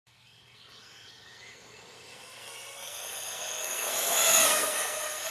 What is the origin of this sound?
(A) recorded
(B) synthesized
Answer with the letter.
B